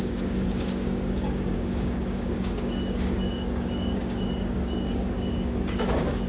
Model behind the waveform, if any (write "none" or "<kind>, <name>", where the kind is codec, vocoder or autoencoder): codec, DAC